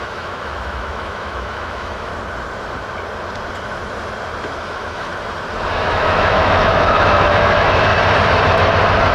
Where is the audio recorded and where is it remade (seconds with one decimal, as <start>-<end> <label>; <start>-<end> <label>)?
0.0-2.1 remade; 2.1-4.6 recorded; 4.6-5.1 remade; 5.1-5.7 recorded; 5.7-7.9 remade; 7.9-9.1 recorded